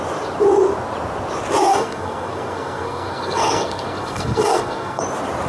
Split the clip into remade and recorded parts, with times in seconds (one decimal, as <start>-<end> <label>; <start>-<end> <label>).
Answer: 0.0-1.7 recorded; 1.7-5.0 remade; 5.0-5.5 recorded